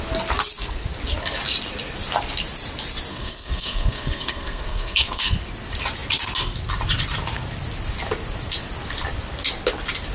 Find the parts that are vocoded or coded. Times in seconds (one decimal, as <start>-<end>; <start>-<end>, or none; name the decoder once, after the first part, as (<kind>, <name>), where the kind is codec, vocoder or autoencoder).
3.1-5.3 (codec, SNAC)